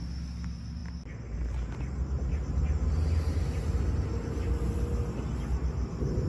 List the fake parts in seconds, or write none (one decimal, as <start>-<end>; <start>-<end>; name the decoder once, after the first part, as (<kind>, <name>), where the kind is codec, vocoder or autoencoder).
none